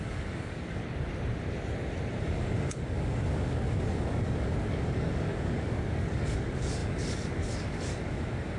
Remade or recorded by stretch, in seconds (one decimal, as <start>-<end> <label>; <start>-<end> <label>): 0.0-0.8 remade; 0.8-2.2 recorded; 2.2-8.6 remade

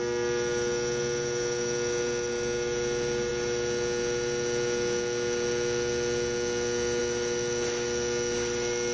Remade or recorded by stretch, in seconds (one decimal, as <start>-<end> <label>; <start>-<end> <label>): 0.0-8.9 recorded